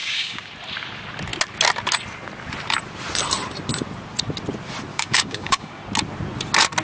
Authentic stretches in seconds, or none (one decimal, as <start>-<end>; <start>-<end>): 0.5-4.9; 5.8-6.8